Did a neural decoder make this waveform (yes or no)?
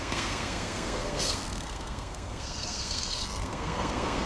yes